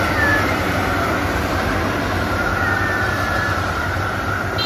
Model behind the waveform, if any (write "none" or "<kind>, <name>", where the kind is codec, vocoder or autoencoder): vocoder, BigVGAN v2